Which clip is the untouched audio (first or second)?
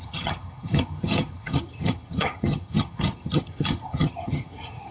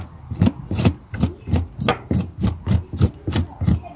second